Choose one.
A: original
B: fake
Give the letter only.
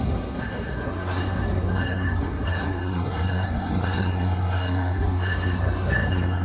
B